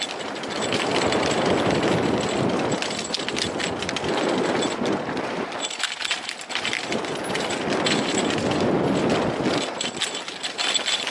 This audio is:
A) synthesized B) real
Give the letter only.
B